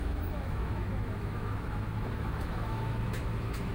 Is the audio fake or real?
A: fake